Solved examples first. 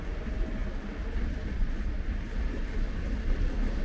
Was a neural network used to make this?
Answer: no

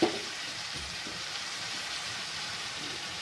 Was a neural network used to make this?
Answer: yes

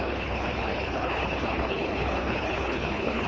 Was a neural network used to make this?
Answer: yes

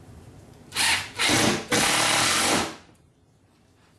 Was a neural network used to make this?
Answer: yes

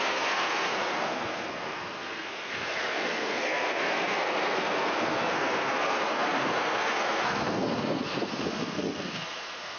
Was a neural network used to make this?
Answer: yes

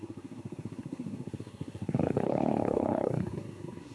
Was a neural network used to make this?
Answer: yes